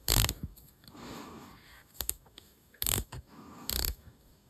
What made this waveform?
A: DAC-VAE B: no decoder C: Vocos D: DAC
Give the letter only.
D